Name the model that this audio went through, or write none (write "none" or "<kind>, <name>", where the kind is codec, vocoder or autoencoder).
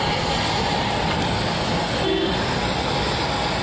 none